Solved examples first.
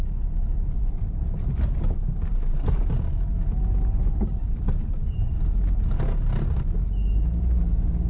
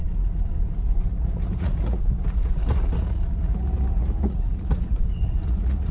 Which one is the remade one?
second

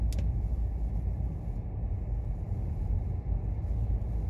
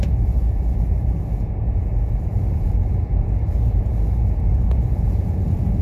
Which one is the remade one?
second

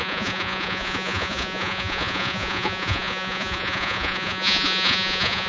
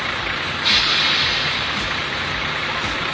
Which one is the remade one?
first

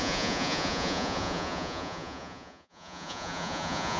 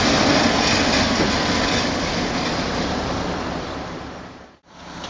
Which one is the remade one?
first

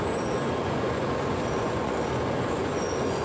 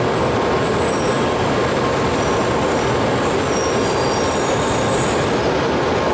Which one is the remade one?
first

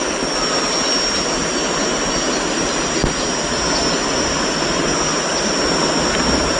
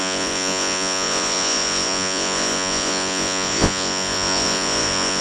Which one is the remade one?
second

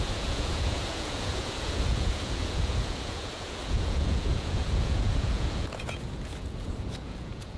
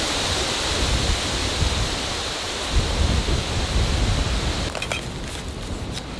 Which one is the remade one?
first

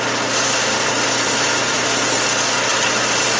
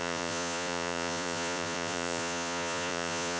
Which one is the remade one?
second